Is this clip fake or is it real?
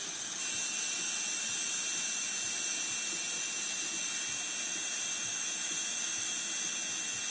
real